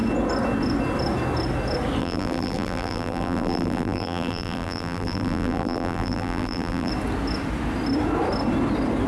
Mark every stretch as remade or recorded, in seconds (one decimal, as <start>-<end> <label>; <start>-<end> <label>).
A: 0.0-2.0 recorded; 2.0-6.9 remade; 6.9-9.1 recorded